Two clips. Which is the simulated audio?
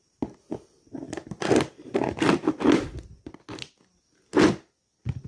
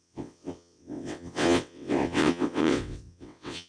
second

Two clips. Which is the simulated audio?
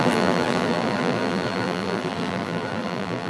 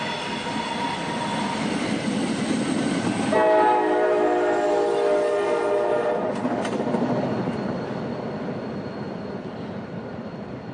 first